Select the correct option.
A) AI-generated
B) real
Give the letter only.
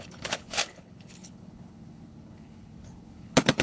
A